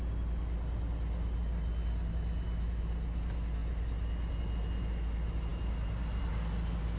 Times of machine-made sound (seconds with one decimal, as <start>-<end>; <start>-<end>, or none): none